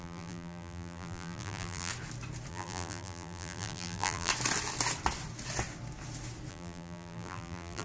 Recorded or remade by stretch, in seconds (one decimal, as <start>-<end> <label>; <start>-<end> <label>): 0.0-1.9 remade; 1.9-2.5 recorded; 2.5-4.3 remade; 4.3-6.5 recorded; 6.5-7.8 remade